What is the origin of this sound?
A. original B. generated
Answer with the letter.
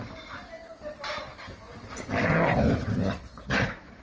A